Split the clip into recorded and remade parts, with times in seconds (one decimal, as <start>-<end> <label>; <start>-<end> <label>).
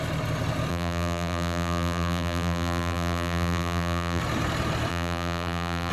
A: 0.0-0.7 recorded; 0.7-4.2 remade; 4.2-4.9 recorded; 4.9-5.9 remade